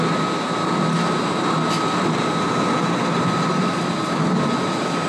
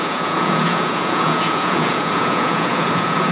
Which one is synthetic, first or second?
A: second